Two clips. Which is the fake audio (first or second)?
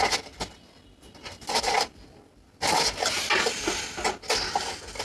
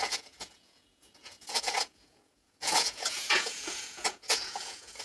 second